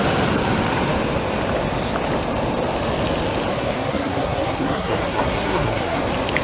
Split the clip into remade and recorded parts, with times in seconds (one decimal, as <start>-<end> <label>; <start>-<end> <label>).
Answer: 0.0-3.5 recorded; 3.5-6.0 remade; 6.0-6.4 recorded